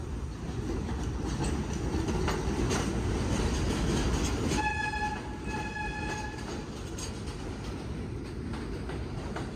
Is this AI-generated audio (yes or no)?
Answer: no